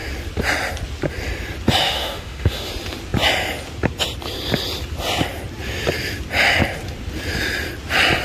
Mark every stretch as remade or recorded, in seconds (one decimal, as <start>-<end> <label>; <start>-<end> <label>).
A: 0.0-1.8 recorded; 1.8-2.7 remade; 2.7-8.2 recorded